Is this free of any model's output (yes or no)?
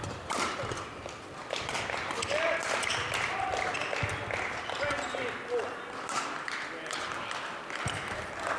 yes